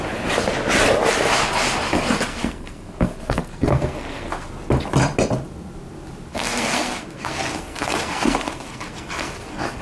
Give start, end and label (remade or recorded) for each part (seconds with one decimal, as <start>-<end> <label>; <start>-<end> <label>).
0.0-2.3 recorded; 2.3-4.5 remade; 4.5-6.3 recorded; 6.3-9.8 remade